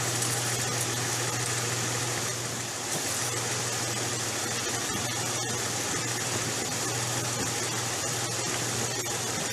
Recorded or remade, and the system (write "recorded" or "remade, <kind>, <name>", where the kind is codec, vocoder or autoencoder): recorded